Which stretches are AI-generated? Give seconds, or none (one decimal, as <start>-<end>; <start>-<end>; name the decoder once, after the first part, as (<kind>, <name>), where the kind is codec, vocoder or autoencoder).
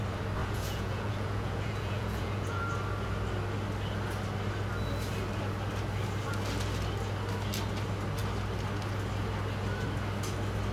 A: 0.4-2.6 (vocoder, Vocos)